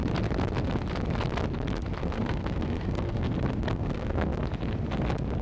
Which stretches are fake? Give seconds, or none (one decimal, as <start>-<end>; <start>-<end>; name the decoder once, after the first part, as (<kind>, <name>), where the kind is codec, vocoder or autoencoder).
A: 2.0-3.3 (codec, SNAC); 3.7-4.4